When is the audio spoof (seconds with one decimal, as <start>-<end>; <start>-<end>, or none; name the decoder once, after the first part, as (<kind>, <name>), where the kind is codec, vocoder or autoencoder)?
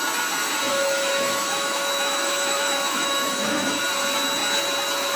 0.7-3.8 (autoencoder, DAC-VAE)